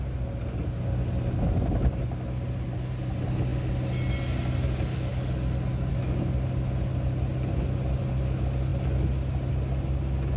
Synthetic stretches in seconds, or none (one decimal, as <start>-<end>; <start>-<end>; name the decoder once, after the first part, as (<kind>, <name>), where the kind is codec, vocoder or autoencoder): none